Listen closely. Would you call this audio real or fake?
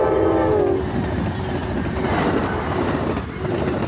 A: real